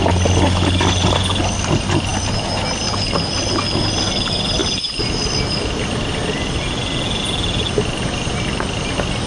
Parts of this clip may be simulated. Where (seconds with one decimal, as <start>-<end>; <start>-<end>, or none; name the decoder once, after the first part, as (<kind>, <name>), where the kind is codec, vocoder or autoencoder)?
2.1-2.8 (vocoder, BigVGAN v2)